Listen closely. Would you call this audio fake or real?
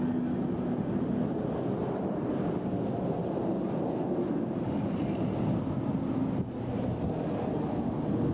real